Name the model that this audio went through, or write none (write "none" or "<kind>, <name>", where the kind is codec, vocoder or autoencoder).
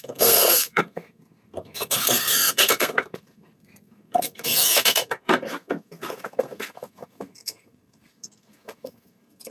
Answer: codec, SNAC